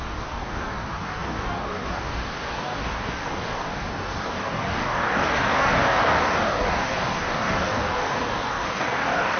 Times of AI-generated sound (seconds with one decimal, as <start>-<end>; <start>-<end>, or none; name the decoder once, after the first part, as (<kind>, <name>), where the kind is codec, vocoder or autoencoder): 0.0-9.4 (codec, DAC)